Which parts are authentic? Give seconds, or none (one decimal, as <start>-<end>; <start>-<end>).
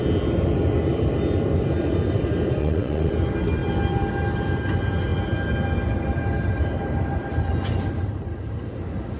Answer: 0.0-2.6; 3.1-9.2